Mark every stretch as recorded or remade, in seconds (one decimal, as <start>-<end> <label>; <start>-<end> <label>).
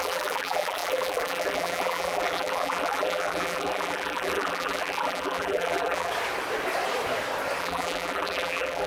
0.0-6.1 remade; 6.1-7.6 recorded; 7.6-8.9 remade